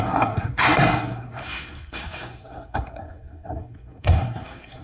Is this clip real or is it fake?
fake